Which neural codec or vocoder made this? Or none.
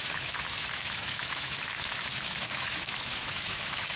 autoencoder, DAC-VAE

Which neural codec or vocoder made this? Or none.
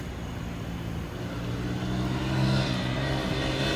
none